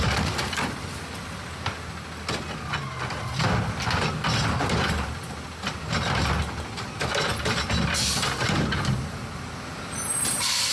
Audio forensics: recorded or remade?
recorded